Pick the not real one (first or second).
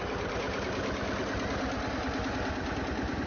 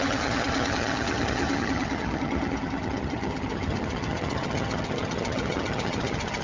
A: second